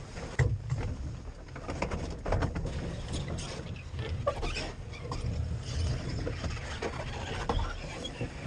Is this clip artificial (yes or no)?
no